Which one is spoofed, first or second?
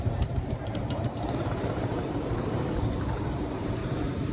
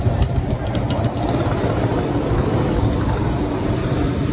first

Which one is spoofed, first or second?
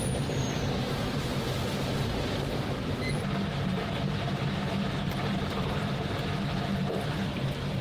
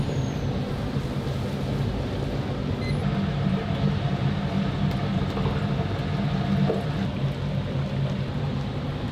first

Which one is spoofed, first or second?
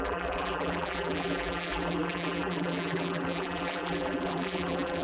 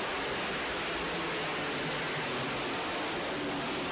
first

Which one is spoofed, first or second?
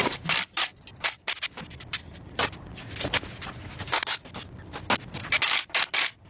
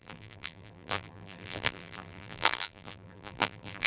second